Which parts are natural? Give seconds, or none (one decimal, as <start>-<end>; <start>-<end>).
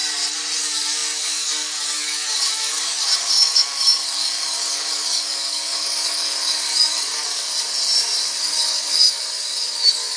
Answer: 0.0-0.6; 7.5-8.4